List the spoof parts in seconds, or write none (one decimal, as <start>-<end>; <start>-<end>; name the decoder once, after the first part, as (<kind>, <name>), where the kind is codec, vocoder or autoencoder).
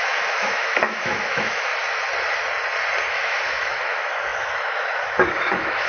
0.0-1.7 (autoencoder, DAC-VAE); 3.1-5.9